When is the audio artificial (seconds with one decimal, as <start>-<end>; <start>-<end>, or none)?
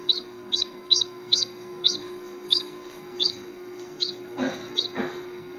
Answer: 0.0-5.6